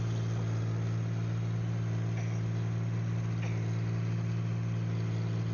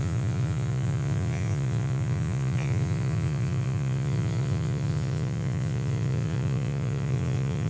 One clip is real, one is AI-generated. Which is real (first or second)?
first